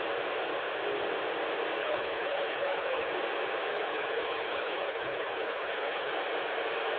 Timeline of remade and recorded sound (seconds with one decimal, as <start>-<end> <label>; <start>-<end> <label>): 0.0-1.8 recorded; 1.8-3.1 remade; 3.1-3.7 recorded; 3.7-6.1 remade; 6.1-7.0 recorded